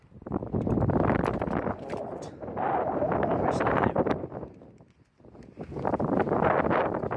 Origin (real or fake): real